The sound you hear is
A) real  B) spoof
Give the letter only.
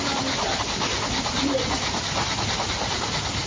A